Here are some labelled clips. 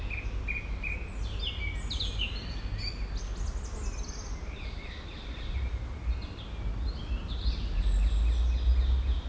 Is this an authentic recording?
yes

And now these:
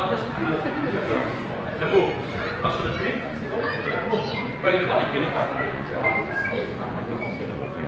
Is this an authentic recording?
no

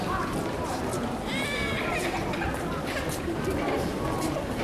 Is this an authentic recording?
yes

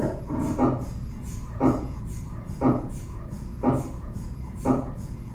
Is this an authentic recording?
no